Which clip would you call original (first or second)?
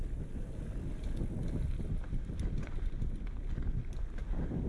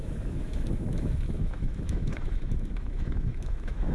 first